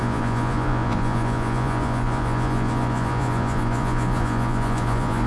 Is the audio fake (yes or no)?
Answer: yes